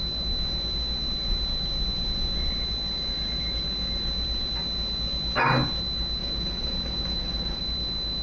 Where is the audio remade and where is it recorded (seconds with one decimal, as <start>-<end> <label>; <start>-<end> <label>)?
0.0-6.2 recorded; 6.2-7.6 remade; 7.6-8.2 recorded